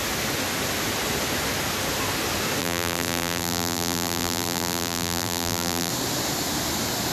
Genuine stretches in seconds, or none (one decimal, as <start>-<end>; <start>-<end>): 0.0-2.6; 5.9-7.1